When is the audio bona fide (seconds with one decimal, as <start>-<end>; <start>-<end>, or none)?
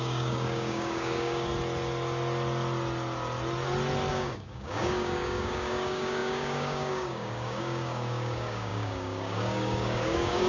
1.5-4.1